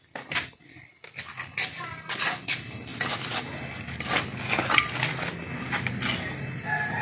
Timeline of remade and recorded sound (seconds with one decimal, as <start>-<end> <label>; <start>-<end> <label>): 0.0-7.0 recorded